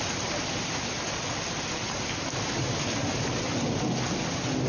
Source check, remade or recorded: recorded